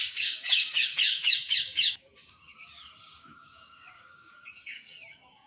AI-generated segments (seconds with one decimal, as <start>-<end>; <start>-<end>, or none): 0.0-5.5